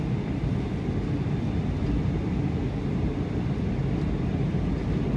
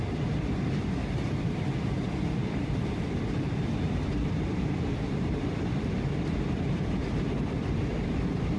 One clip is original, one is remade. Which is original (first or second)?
first